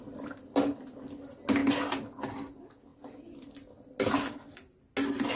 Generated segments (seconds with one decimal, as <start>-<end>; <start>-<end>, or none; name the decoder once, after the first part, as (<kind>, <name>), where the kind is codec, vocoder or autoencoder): none